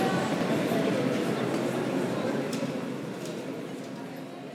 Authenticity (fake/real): real